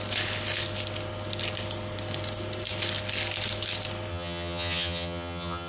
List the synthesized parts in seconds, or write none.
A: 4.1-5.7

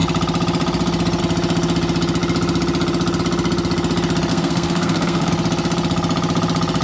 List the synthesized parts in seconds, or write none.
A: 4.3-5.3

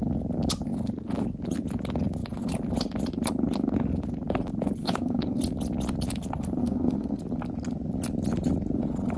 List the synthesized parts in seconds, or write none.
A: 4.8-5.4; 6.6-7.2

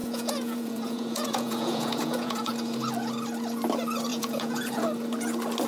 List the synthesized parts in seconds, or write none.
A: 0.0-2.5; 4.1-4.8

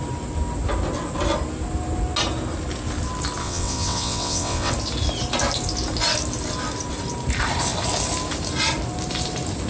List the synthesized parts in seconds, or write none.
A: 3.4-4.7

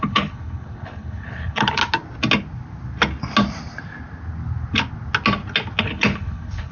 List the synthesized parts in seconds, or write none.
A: 0.0-1.8; 5.8-6.7

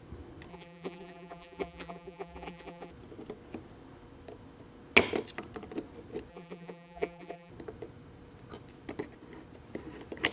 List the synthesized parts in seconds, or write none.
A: 0.5-2.9; 6.3-7.5